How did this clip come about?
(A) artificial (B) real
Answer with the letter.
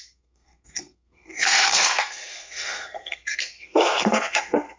A